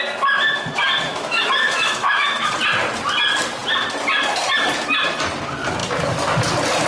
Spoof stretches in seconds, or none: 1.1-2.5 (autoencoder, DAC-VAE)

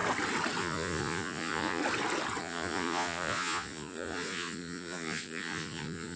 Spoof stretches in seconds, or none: 0.6-1.8 (vocoder, Vocos); 2.4-6.2

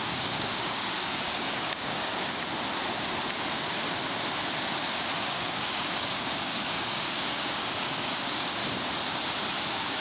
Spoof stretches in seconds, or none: 0.0-2.1 (codec, DAC); 5.2-8.6; 9.6-10.0

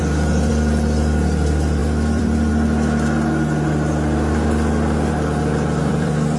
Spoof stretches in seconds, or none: 1.8-2.5 (vocoder, BigVGAN v2); 5.8-6.4